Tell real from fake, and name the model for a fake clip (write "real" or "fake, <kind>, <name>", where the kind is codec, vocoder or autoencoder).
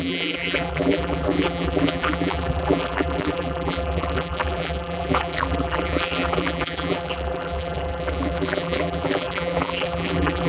fake, vocoder, BigVGAN v2